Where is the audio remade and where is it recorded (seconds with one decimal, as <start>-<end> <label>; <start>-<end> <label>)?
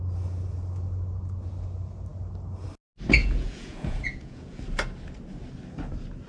0.0-3.2 recorded; 3.2-4.6 remade; 4.6-6.3 recorded